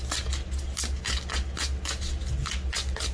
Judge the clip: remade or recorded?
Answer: recorded